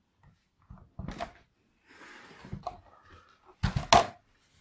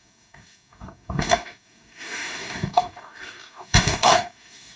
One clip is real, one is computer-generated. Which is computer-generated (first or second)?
second